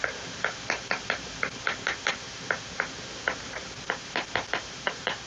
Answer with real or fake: fake